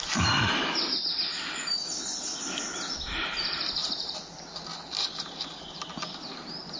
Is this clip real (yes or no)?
yes